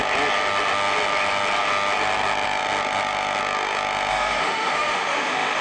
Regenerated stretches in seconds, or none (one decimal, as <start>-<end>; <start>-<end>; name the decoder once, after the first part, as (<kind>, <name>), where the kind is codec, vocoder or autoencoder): 4.1-5.6 (autoencoder, DAC-VAE)